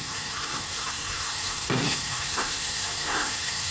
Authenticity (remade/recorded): remade